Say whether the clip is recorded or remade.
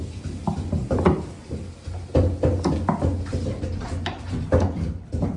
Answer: recorded